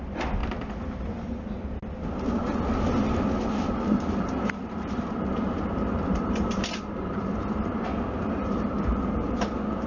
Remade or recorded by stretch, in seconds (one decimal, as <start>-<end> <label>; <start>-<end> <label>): 0.0-0.4 remade; 0.4-3.5 recorded; 3.5-9.9 remade